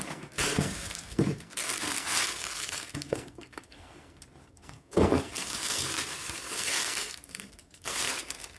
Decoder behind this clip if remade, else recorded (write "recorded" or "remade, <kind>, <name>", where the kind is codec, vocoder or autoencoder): remade, codec, SNAC